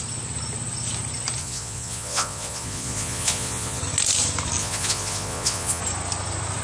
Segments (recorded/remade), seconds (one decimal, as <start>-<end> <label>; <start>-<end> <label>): 0.0-1.4 recorded; 1.4-3.8 remade; 3.8-4.6 recorded; 4.6-5.8 remade; 5.8-6.6 recorded